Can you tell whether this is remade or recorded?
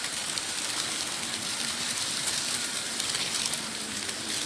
remade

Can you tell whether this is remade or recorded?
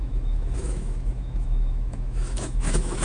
remade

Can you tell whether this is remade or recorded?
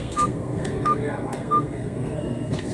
remade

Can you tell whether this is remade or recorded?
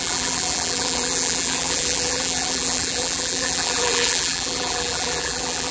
remade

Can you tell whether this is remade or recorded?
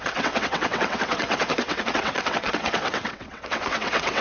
remade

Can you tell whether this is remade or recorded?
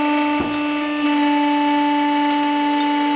recorded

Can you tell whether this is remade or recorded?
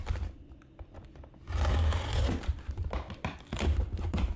remade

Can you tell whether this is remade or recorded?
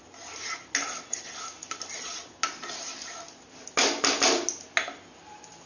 recorded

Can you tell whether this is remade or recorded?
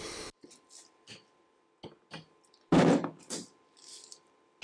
recorded